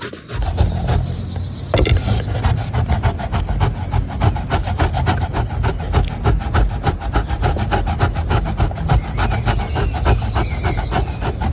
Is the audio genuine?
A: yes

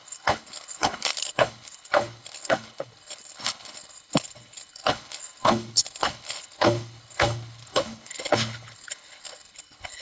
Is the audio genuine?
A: no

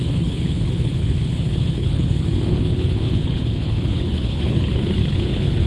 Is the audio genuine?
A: no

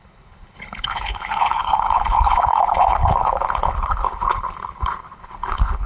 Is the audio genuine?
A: no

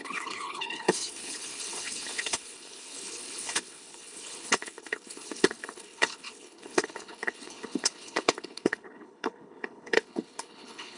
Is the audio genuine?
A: no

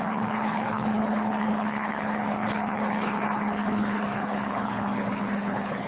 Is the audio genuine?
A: no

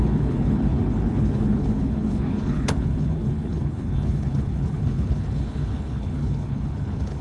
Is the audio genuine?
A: no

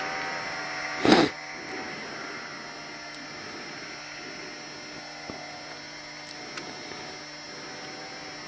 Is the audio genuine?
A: yes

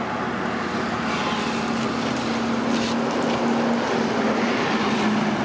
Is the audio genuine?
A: yes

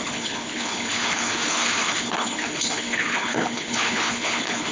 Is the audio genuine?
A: no